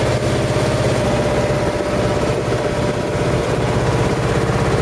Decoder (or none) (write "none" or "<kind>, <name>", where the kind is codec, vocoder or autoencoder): none